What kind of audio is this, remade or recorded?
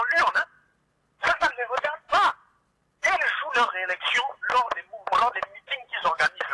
recorded